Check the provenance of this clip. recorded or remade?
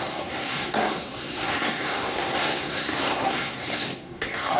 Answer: remade